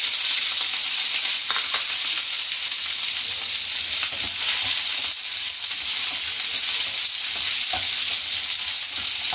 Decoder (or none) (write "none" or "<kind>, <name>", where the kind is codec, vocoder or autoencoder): none